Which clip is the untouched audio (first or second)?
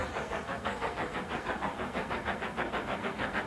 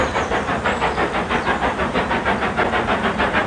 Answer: second